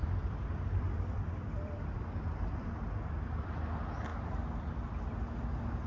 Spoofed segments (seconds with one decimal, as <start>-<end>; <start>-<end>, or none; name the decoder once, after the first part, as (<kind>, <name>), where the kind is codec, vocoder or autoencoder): 0.0-3.5 (vocoder, BigVGAN v2)